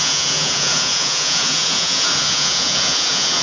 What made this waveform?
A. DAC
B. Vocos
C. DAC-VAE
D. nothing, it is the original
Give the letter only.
B